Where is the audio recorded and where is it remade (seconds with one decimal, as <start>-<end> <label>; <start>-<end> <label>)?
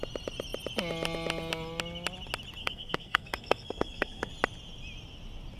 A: 0.0-2.6 recorded; 2.6-4.3 remade; 4.3-5.6 recorded